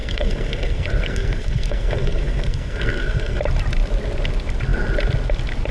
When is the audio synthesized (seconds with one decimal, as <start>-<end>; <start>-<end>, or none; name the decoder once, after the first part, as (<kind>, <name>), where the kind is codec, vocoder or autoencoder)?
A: 0.0-3.4 (codec, SNAC)